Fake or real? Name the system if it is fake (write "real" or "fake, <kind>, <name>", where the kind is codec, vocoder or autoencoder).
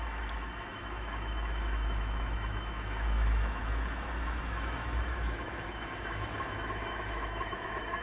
fake, autoencoder, DAC-VAE